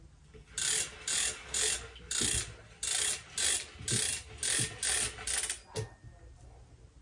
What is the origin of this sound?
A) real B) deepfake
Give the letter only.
A